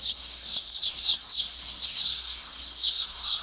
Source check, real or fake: fake